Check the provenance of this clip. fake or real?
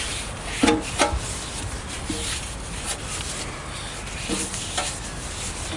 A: real